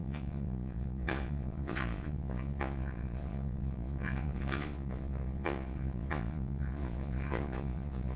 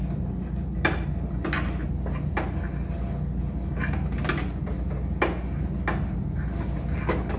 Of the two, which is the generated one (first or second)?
first